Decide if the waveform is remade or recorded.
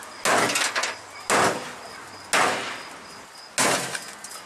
recorded